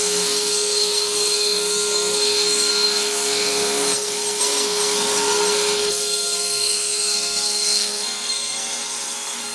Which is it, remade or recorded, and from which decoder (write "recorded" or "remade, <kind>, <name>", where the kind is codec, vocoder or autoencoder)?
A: remade, codec, SNAC